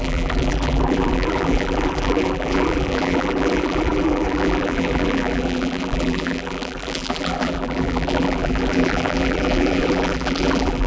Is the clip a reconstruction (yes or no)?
yes